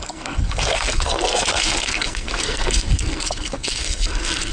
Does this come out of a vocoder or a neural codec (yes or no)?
yes